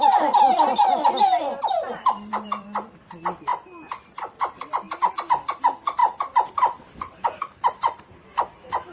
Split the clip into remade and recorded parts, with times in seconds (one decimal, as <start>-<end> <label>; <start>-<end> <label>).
0.0-1.5 recorded; 1.5-2.9 remade; 2.9-3.5 recorded; 3.5-5.1 remade; 5.1-6.0 recorded; 6.0-8.1 remade; 8.1-8.9 recorded

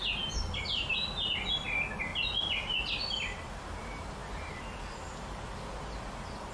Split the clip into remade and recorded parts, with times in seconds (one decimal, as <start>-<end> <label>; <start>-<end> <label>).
0.0-6.5 recorded

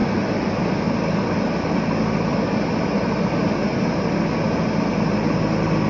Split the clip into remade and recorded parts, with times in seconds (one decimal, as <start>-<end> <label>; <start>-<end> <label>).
0.0-5.9 recorded

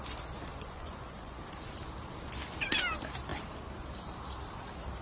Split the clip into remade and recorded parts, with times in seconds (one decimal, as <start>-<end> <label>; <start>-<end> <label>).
0.0-0.5 recorded; 0.5-1.4 remade; 1.4-5.0 recorded

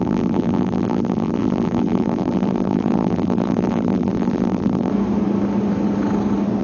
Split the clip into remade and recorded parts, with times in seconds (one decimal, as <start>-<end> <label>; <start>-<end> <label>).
0.0-4.9 remade; 4.9-6.6 recorded